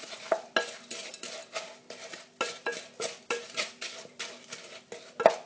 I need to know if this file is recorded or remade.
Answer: recorded